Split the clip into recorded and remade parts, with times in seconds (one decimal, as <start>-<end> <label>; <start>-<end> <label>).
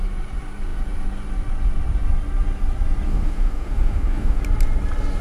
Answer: 0.0-3.1 recorded; 3.1-4.4 remade; 4.4-5.2 recorded